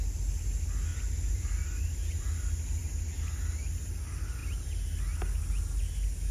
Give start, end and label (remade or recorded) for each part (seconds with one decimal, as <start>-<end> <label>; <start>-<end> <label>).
0.0-0.9 recorded; 0.9-2.4 remade; 2.4-6.3 recorded